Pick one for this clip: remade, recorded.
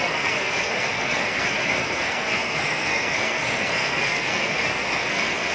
remade